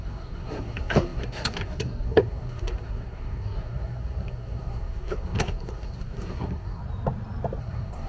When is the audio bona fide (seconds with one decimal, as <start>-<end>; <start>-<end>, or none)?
6.8-7.6